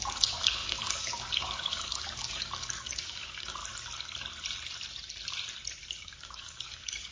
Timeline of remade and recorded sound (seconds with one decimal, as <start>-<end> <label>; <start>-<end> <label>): 0.0-3.6 remade; 3.6-6.0 recorded; 6.0-7.1 remade